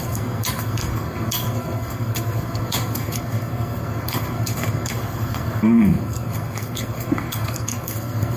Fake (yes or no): yes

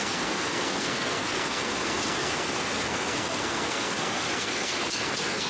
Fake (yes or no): yes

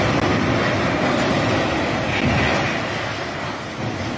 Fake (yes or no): no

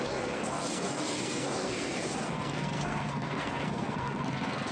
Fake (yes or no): yes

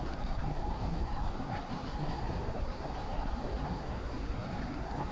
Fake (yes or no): yes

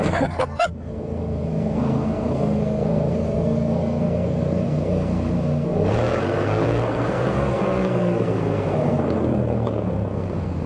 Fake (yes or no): yes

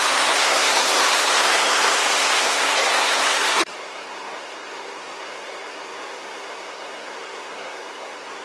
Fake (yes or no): yes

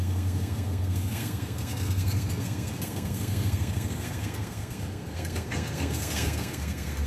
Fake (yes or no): yes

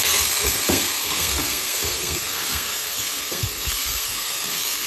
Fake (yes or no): yes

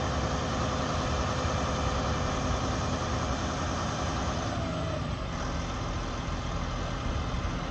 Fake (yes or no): no